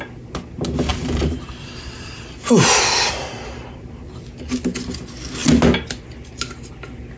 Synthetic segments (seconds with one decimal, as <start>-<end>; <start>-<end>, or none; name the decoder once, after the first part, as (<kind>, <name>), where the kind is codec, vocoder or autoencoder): 0.9-4.2 (vocoder, BigVGAN v2)